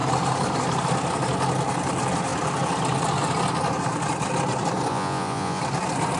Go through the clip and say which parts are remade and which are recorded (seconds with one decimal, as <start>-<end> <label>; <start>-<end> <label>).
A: 0.0-4.9 recorded; 4.9-5.6 remade; 5.6-6.2 recorded